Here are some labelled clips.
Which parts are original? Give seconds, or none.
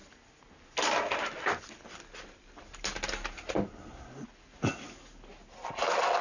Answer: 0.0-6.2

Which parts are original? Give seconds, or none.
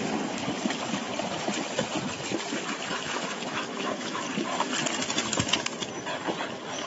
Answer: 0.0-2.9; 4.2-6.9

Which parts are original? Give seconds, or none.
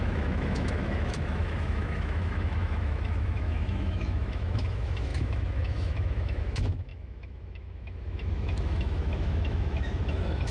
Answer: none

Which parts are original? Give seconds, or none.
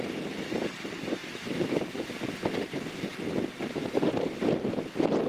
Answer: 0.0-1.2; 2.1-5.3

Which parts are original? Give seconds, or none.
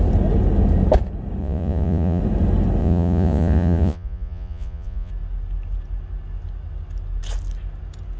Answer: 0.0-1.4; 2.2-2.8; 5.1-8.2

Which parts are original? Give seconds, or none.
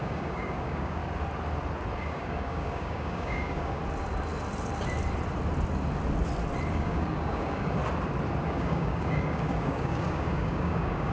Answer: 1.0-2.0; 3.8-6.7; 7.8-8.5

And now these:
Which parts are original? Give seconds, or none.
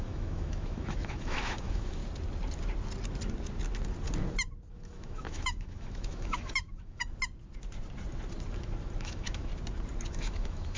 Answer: 2.0-4.7; 7.0-9.0; 9.5-10.1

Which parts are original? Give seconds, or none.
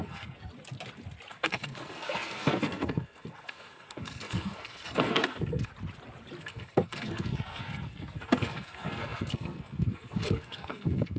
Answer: 0.5-1.3; 5.7-6.4